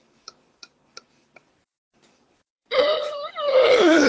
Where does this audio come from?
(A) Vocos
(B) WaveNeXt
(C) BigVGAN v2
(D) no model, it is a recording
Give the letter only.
C